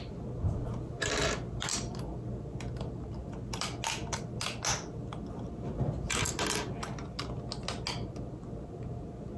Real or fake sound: real